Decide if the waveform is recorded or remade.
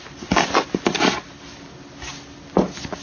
recorded